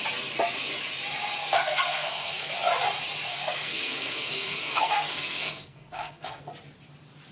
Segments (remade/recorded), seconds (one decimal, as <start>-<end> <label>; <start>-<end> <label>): 0.0-1.4 recorded; 1.4-2.5 remade; 2.5-3.3 recorded; 3.3-6.5 remade; 6.5-7.3 recorded